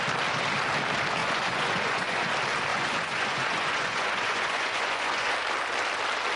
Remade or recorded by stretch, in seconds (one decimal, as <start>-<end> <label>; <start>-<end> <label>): 0.0-1.2 recorded; 1.2-2.3 remade; 2.3-2.7 recorded; 2.7-5.3 remade; 5.3-6.4 recorded